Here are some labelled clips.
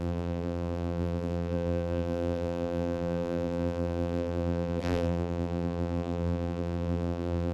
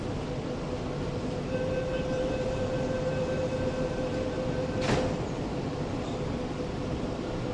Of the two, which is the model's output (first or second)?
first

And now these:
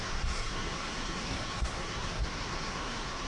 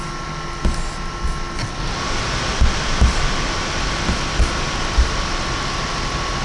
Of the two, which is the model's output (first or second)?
first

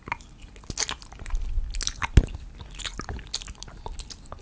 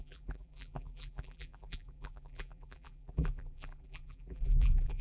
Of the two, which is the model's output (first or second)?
second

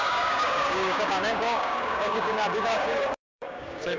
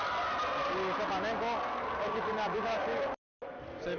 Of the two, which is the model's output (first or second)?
first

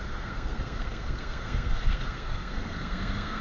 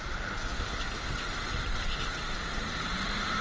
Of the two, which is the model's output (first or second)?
first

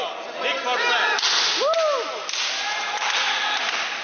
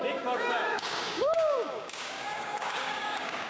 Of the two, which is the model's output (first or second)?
second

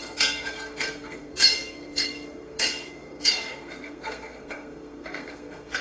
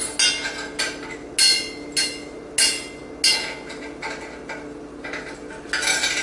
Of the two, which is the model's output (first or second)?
first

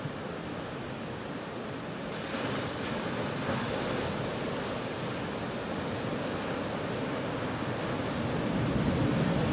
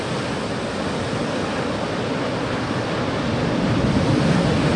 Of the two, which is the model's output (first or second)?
second